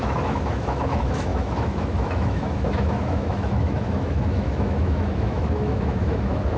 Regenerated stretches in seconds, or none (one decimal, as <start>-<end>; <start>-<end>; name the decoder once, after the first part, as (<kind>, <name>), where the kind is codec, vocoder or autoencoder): 0.0-6.6 (autoencoder, DAC-VAE)